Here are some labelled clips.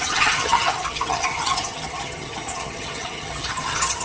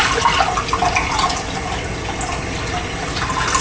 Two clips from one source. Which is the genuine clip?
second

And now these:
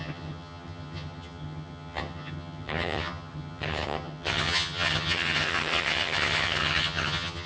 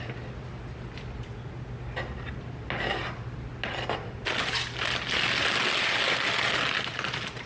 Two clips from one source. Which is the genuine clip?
second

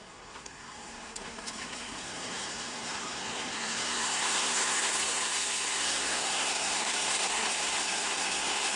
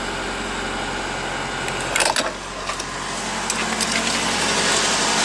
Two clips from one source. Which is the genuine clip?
second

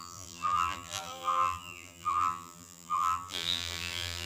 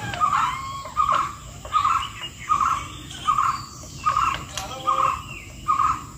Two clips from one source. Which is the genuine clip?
second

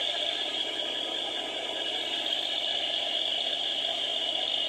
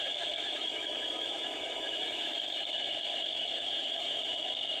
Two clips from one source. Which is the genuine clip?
first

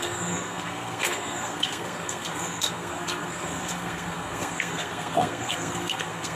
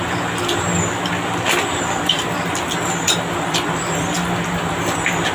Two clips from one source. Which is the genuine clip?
second